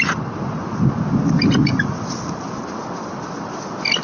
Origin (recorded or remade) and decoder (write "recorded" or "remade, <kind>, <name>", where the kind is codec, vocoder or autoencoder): recorded